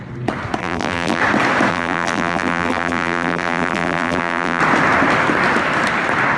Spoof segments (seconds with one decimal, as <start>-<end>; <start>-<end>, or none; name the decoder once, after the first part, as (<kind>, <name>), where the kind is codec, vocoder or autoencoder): 0.6-1.2 (vocoder, BigVGAN v2); 1.7-4.6